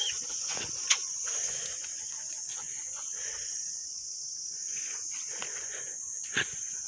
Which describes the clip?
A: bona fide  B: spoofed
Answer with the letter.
B